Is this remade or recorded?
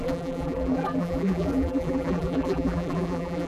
remade